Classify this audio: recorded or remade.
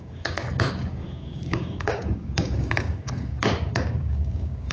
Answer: remade